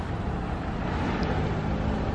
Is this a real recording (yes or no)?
yes